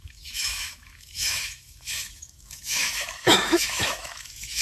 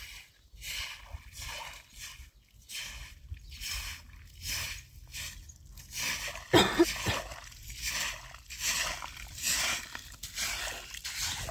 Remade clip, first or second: first